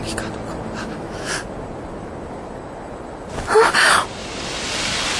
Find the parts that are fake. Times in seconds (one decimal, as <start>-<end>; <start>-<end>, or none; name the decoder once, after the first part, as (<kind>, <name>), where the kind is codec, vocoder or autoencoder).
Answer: 0.8-1.3 (autoencoder, DAC-VAE)